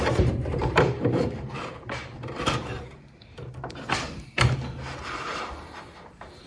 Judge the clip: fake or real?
fake